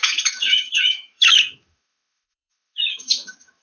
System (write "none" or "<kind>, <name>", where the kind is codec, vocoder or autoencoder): autoencoder, DAC-VAE